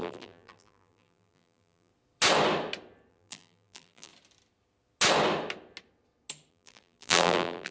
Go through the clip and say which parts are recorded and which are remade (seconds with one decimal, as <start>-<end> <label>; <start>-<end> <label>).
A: 0.0-1.9 remade; 1.9-3.1 recorded; 3.1-4.1 remade; 4.1-6.5 recorded; 6.5-7.7 remade